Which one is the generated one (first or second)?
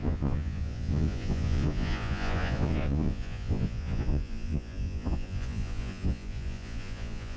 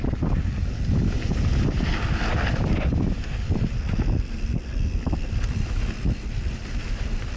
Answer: first